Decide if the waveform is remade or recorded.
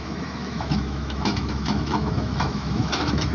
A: remade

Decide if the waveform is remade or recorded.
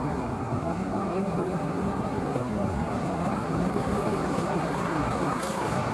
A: remade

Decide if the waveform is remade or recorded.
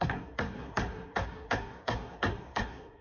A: remade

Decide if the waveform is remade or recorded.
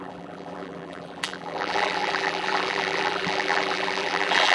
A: remade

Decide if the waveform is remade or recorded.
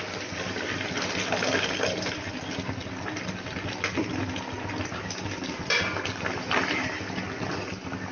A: recorded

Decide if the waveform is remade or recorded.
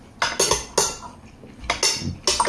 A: recorded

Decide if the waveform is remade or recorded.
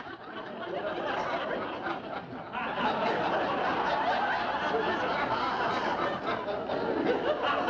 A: recorded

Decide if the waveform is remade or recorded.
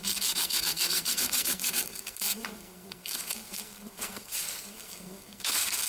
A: remade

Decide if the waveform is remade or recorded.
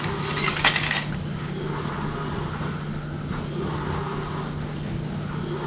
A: recorded